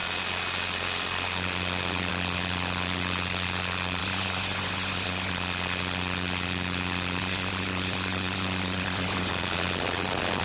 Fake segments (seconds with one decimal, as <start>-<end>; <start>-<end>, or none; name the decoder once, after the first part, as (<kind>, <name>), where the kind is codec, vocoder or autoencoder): 4.0-5.3 (vocoder, Vocos); 7.2-9.3